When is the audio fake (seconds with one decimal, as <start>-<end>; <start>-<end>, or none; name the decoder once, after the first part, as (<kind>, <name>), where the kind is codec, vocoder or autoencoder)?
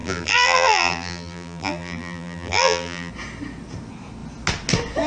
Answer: 0.0-3.1 (vocoder, BigVGAN v2)